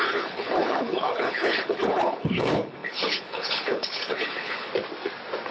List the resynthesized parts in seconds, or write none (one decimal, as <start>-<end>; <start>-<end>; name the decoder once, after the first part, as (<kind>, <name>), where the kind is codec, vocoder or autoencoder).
0.0-4.7 (codec, HILCodec)